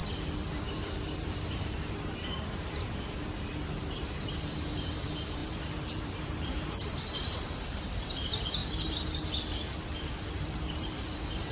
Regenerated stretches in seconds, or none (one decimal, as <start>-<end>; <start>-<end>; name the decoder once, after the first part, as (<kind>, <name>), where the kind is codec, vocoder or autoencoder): 0.5-8.6 (vocoder, BigVGAN v2); 10.3-11.5